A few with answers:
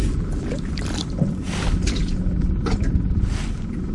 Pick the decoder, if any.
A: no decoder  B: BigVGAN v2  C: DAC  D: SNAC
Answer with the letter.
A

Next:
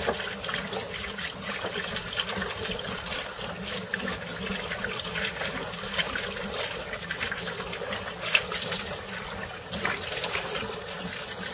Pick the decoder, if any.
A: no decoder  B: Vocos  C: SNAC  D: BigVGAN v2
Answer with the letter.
A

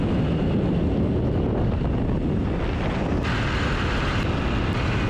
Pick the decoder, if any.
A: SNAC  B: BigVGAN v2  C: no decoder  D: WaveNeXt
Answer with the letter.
C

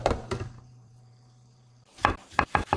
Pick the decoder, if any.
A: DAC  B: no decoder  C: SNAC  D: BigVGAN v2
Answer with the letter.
D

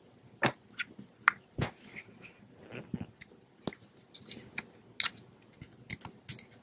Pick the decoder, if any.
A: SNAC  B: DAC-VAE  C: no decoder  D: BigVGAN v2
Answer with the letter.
C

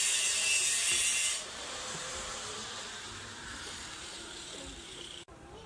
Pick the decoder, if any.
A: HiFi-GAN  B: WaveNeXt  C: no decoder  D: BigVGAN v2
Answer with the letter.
D